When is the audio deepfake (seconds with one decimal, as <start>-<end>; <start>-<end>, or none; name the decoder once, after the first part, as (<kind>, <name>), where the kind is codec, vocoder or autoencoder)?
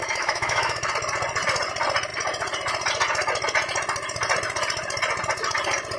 0.0-0.9 (autoencoder, DAC-VAE)